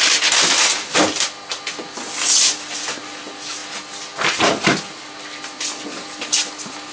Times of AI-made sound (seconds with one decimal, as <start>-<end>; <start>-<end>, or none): none